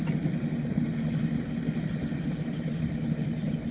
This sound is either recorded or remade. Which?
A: recorded